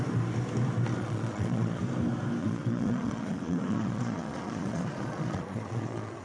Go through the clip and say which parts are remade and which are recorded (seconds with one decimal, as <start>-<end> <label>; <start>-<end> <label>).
0.0-1.0 recorded; 1.0-1.8 remade; 1.8-2.4 recorded; 2.4-6.2 remade